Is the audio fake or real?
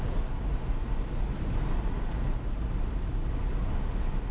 real